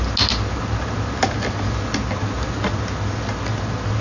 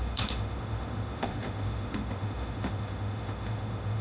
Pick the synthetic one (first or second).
second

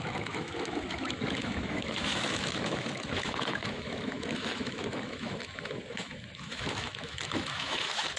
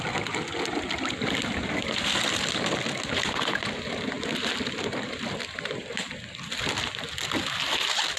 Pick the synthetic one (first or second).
first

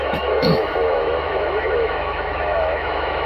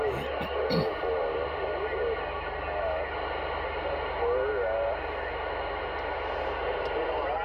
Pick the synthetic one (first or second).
first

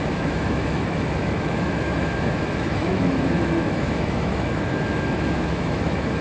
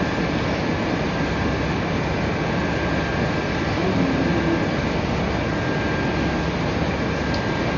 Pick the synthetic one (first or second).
first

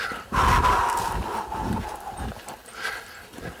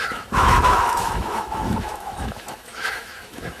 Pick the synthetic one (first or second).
second